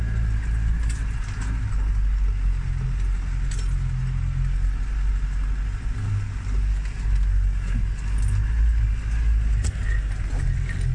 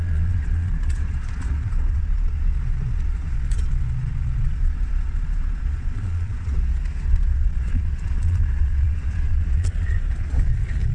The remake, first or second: second